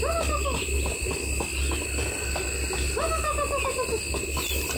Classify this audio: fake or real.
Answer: real